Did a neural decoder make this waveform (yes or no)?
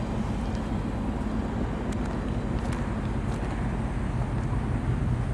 no